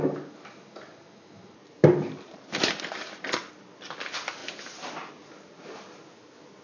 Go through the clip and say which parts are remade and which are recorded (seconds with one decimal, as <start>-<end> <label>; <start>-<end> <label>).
0.0-1.8 recorded; 1.8-3.5 remade; 3.5-6.6 recorded